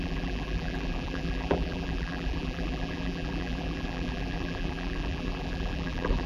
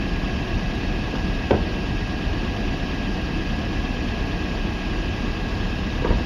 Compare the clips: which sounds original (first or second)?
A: second